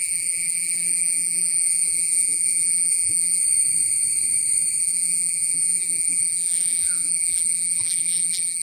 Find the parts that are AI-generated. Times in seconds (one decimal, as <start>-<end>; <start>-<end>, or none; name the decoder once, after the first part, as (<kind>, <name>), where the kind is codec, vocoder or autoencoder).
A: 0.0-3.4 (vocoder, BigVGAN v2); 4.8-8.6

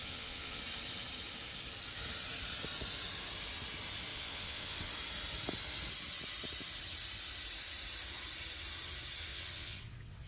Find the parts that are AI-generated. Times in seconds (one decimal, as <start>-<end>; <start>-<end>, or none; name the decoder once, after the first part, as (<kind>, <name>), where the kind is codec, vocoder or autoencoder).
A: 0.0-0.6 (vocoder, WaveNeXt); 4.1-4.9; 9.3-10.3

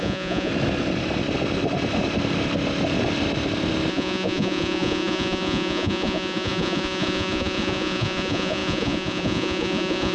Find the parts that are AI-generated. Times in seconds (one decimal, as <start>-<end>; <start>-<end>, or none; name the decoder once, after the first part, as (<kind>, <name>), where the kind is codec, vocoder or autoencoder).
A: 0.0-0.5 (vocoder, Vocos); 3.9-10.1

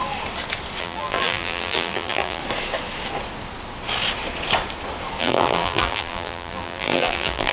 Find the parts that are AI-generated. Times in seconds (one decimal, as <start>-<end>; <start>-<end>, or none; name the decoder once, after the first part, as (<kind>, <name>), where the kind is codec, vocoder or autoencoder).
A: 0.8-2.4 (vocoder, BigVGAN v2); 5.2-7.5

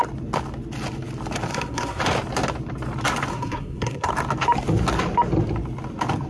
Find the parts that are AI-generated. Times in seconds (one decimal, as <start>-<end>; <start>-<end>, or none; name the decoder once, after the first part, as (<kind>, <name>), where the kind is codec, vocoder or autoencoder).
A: 1.5-2.0 (codec, SNAC); 3.3-4.1

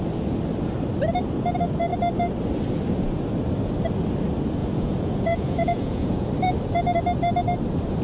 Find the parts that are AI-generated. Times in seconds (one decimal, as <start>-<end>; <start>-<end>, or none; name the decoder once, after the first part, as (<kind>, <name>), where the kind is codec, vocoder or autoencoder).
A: 4.6-6.3 (vocoder, Vocos)